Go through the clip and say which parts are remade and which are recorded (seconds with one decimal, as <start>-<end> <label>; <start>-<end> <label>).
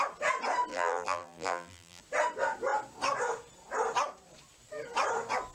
0.0-0.7 recorded; 0.7-2.0 remade; 2.0-5.5 recorded